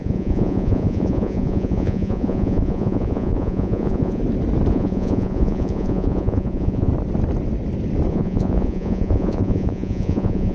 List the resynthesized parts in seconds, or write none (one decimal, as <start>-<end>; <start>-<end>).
0.0-4.2; 4.7-6.9; 8.1-10.5